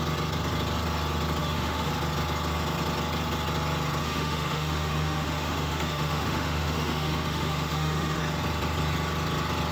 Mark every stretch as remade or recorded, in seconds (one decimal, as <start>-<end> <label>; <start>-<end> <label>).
0.0-1.4 recorded; 1.4-1.9 remade; 1.9-4.0 recorded; 4.0-8.2 remade; 8.2-9.7 recorded